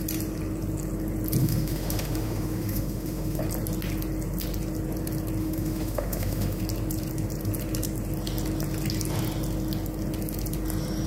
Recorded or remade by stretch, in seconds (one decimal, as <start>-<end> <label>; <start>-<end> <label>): 0.0-1.4 recorded; 1.4-3.4 remade; 3.4-5.4 recorded; 5.4-6.6 remade; 6.6-11.1 recorded